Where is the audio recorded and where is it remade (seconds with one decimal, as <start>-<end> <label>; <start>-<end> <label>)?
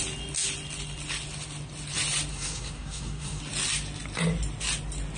0.0-2.3 recorded; 2.3-3.4 remade; 3.4-5.2 recorded